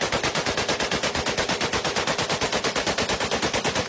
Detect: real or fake real